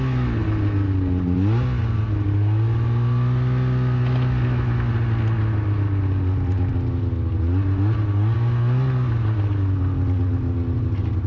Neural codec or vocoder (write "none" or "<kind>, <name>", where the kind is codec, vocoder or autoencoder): none